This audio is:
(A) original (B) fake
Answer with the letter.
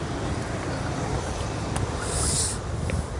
A